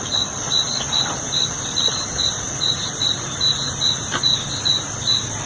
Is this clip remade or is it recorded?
recorded